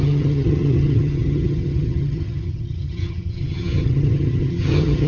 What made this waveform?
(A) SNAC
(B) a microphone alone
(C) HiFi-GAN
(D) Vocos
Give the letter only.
C